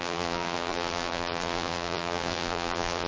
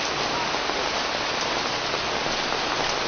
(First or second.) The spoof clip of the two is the first